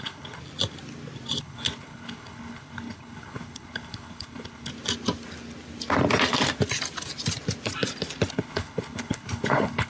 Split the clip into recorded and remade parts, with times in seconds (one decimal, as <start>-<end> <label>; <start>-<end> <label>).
0.0-0.4 remade; 0.4-1.4 recorded; 1.4-4.7 remade; 4.7-8.3 recorded; 8.3-9.9 remade